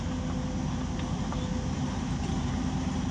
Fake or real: real